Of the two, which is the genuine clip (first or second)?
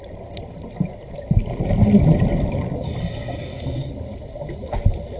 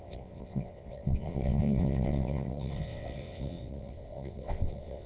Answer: first